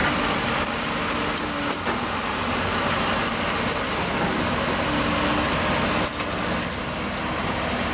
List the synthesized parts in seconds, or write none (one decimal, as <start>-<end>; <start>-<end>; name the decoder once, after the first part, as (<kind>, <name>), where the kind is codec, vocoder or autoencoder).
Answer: none

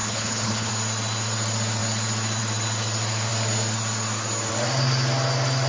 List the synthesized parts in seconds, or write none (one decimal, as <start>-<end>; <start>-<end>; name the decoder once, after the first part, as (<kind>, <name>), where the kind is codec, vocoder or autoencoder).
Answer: 0.0-0.7 (codec, HILCodec)

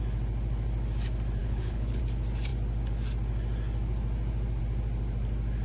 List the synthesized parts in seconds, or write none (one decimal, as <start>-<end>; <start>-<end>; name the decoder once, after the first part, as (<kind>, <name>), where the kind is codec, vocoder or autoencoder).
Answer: 1.4-2.0 (codec, HILCodec)